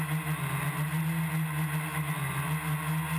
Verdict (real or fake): real